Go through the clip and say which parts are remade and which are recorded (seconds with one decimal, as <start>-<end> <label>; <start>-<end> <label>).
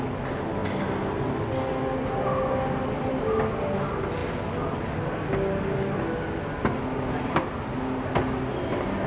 0.0-9.1 recorded